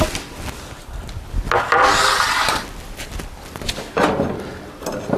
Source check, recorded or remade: recorded